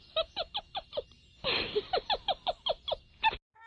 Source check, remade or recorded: recorded